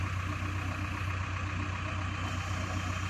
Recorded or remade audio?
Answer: recorded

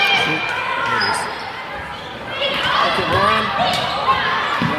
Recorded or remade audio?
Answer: recorded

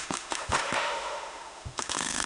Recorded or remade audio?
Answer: remade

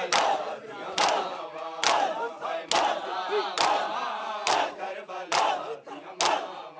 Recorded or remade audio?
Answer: recorded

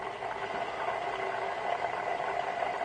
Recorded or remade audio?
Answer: recorded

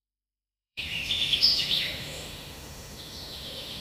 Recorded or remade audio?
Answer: remade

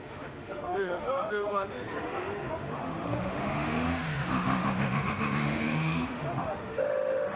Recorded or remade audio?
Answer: remade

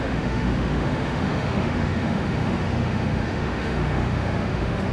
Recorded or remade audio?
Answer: remade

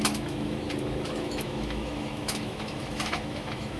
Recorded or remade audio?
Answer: remade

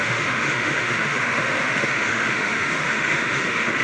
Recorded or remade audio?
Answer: remade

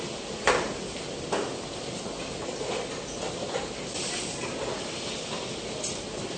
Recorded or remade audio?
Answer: recorded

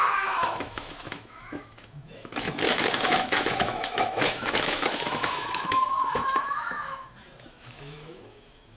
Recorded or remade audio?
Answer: remade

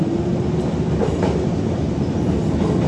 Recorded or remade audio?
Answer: recorded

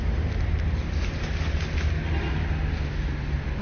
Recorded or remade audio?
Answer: recorded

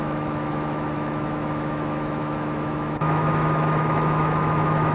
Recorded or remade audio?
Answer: remade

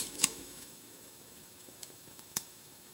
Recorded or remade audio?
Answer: remade